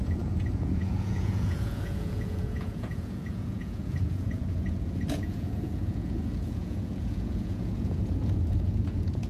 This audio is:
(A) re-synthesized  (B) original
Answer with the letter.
A